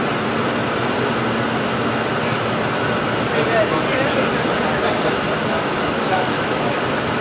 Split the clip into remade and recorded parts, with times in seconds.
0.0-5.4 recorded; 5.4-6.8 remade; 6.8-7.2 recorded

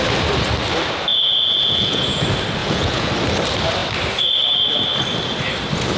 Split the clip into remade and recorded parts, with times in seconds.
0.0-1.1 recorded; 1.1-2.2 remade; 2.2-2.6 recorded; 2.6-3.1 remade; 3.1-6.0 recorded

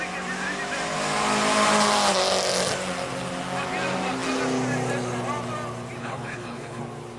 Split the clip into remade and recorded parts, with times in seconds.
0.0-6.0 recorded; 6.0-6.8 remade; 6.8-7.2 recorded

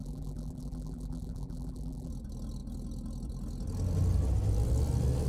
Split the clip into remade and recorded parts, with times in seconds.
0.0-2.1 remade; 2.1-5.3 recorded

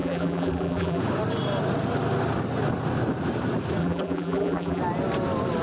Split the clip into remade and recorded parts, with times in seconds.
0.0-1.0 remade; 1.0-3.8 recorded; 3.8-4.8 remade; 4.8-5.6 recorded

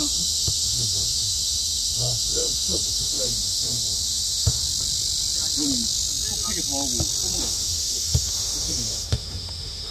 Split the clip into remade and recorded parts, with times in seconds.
0.0-4.6 remade; 4.6-7.4 recorded; 7.4-9.9 remade

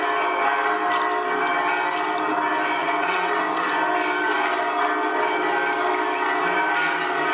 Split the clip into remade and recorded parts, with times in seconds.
0.0-2.8 recorded; 2.8-3.8 remade; 3.8-7.3 recorded

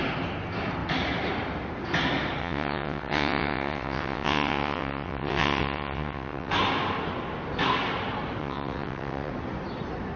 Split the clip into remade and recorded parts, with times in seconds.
0.0-2.4 recorded; 2.4-6.5 remade; 6.5-8.4 recorded; 8.4-9.3 remade; 9.3-10.2 recorded